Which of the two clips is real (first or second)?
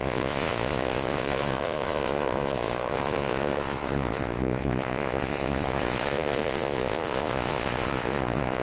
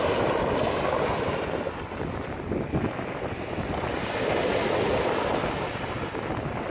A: second